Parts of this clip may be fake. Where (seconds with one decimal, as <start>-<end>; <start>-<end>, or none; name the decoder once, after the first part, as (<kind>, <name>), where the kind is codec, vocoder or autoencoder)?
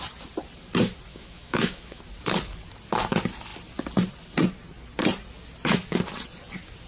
1.1-2.0 (autoencoder, DAC-VAE)